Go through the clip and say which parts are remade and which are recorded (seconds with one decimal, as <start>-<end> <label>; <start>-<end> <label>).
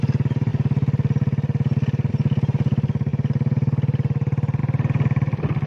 0.0-5.7 recorded